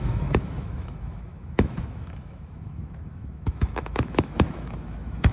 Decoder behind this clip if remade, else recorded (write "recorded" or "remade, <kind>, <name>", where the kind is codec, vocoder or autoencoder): remade, autoencoder, DAC-VAE